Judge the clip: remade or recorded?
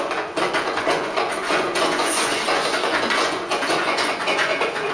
remade